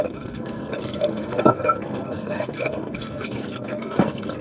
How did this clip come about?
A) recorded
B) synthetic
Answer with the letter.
B